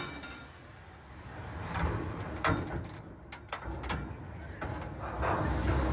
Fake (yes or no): no